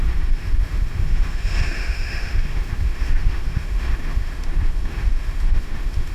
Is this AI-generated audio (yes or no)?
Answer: yes